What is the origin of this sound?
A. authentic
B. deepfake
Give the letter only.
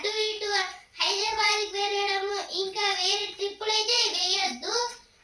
B